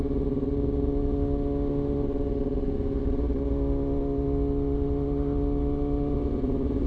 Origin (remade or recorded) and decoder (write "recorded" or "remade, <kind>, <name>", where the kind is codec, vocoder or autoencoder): recorded